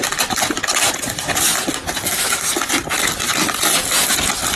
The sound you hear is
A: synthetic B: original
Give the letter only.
B